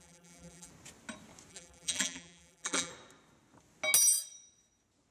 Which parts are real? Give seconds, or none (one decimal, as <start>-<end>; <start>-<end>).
0.7-1.5; 2.9-5.1